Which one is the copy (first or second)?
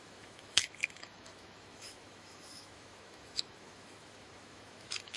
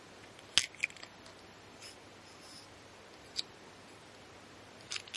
first